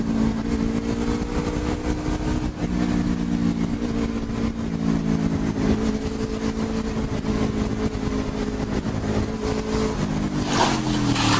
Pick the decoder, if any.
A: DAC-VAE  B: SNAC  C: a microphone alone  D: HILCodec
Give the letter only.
C